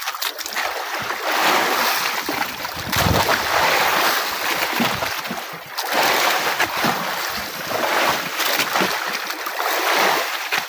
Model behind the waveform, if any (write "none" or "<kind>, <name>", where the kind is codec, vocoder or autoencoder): none